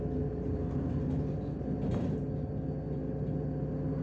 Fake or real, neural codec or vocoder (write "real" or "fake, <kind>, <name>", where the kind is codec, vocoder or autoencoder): real